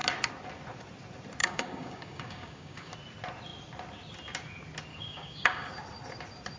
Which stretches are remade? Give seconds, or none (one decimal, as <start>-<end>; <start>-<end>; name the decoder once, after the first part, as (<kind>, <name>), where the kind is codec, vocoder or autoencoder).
1.4-2.9 (codec, DAC); 4.9-5.7